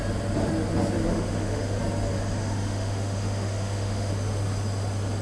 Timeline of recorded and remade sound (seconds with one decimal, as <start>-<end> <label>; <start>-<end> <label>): 0.0-1.1 recorded; 1.1-1.8 remade; 1.8-2.4 recorded; 2.4-4.1 remade; 4.1-5.2 recorded